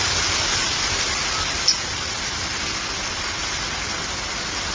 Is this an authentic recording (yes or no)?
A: no